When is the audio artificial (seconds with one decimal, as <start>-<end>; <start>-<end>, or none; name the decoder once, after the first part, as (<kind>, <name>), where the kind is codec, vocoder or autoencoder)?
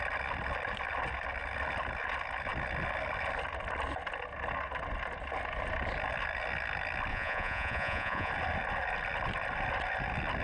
7.1-8.3 (vocoder, Vocos)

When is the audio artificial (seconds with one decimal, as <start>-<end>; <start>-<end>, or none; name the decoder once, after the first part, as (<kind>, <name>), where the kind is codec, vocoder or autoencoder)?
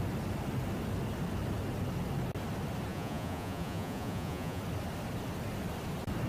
2.9-4.6 (vocoder, Vocos)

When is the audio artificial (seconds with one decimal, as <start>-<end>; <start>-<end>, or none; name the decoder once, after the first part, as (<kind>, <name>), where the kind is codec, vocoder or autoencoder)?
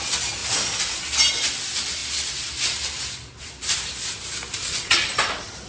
4.6-5.1 (vocoder, Vocos)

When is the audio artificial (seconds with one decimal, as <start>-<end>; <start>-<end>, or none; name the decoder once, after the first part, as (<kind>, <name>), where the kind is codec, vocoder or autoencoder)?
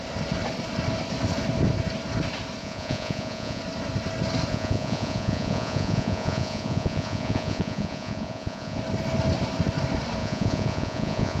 2.6-3.6 (vocoder, Vocos); 4.5-8.8; 10.2-11.4